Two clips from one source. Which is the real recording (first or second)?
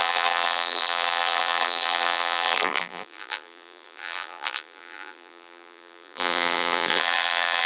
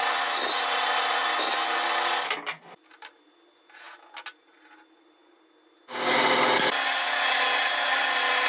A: second